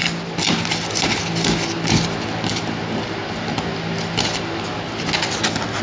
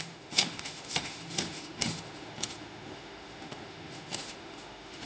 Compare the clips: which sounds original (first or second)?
first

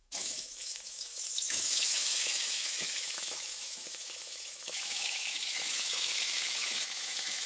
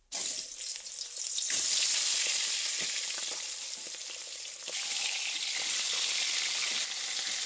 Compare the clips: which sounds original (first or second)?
second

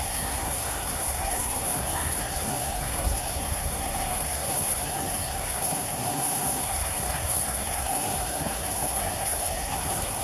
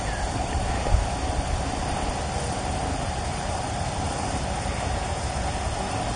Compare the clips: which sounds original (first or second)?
second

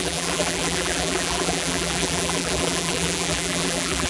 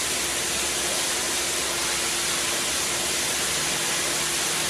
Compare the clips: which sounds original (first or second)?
second